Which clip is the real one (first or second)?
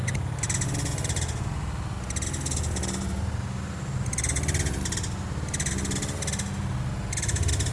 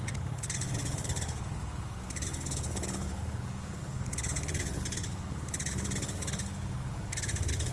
first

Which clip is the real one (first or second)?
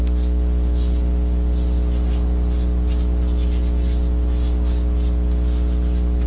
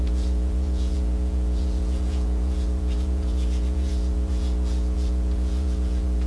first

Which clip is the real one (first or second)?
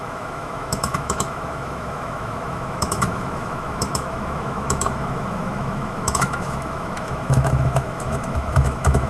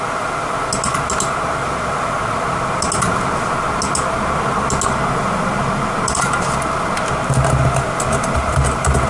second